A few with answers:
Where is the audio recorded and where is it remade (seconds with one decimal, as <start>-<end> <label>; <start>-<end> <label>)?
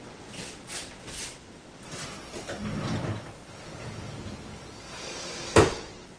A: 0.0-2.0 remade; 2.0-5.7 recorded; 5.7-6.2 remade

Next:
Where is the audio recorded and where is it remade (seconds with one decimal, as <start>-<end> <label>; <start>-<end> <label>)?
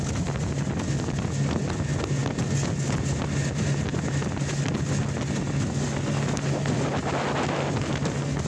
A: 0.0-8.5 recorded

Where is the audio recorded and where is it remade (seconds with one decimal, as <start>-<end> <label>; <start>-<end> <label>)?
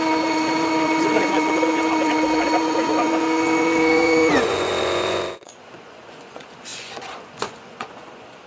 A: 0.0-8.5 remade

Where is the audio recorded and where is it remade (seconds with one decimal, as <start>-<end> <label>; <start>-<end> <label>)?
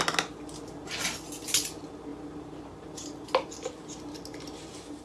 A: 0.0-5.0 recorded